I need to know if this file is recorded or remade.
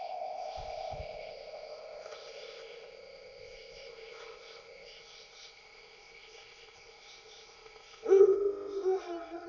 remade